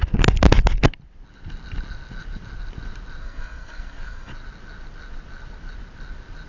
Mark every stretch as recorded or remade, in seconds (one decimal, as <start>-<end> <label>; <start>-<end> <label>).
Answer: 0.0-3.2 recorded; 3.2-4.3 remade; 4.3-6.5 recorded

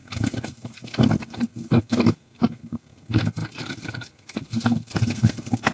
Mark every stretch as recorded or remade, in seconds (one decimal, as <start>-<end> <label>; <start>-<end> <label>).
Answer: 0.0-5.7 remade